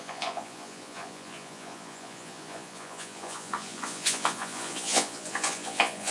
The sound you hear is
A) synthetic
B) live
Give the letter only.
A